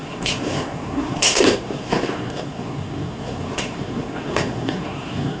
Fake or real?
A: fake